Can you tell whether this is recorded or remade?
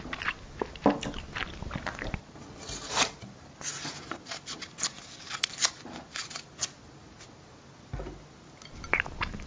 recorded